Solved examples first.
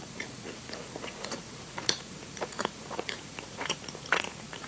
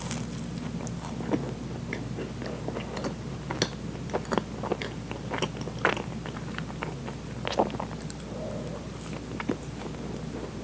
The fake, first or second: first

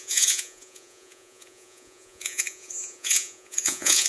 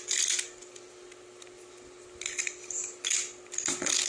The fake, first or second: first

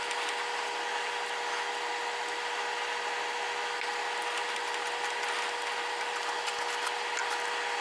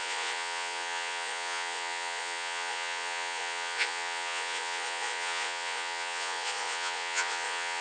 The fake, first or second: second